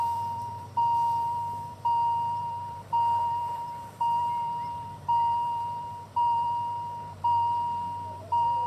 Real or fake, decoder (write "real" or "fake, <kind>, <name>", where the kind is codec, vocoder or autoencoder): fake, vocoder, BigVGAN v2